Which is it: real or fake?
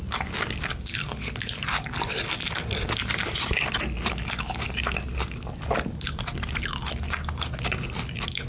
real